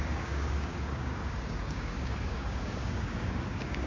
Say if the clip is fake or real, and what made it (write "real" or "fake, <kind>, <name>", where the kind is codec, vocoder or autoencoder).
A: fake, codec, DAC